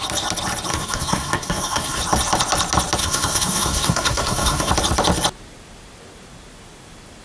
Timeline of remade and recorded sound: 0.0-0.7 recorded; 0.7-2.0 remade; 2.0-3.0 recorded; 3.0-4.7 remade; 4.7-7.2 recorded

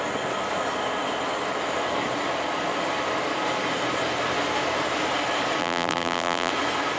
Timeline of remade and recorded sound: 0.0-5.6 recorded; 5.6-6.5 remade; 6.5-7.0 recorded

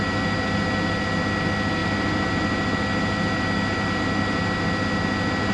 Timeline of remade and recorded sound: 0.0-5.5 recorded

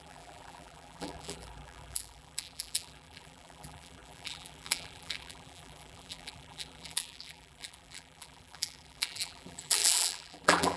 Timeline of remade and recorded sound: 0.0-10.8 remade

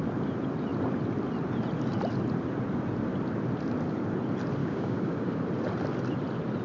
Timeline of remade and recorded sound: 0.0-4.6 recorded; 4.6-5.4 remade; 5.4-6.6 recorded

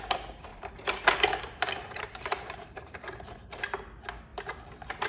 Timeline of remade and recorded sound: 0.0-0.5 recorded; 0.5-3.6 remade; 3.6-5.1 recorded